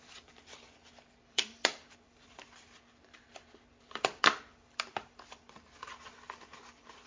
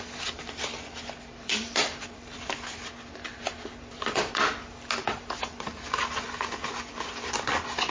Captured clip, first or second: second